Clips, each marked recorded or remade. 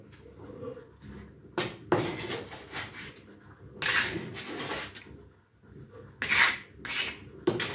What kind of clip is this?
recorded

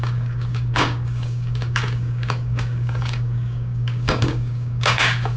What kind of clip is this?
remade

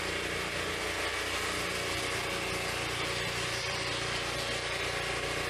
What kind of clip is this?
recorded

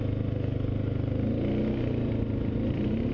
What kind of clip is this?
recorded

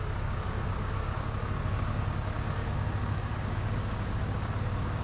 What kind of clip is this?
remade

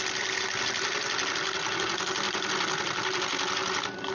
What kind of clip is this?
recorded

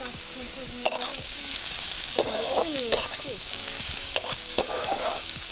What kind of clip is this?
remade